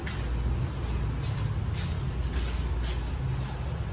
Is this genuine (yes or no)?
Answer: yes